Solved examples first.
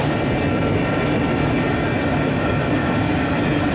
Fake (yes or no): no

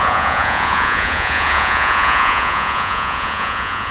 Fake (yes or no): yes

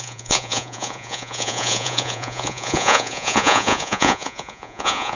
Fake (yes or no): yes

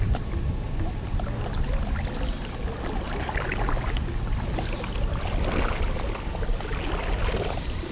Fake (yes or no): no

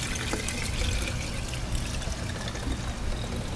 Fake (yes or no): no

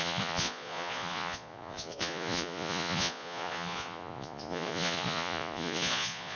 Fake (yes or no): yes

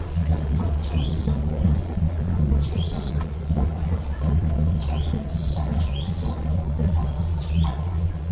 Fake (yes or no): yes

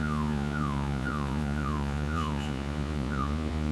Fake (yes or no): yes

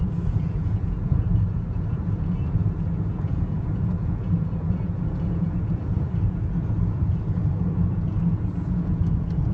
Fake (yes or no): yes